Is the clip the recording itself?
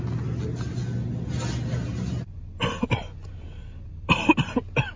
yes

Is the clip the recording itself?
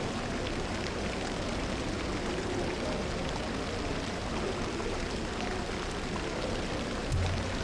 yes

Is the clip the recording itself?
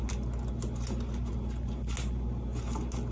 yes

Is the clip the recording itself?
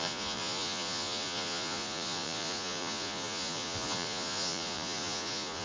no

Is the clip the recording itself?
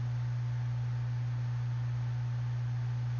yes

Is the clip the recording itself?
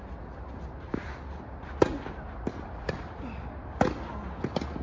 yes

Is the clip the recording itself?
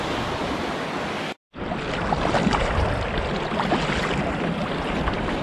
yes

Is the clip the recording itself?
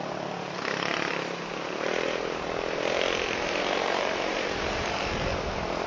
no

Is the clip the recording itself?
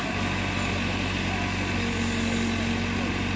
yes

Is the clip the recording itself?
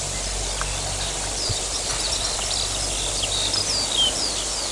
yes